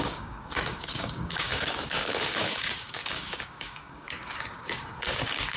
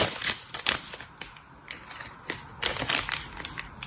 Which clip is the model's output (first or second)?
first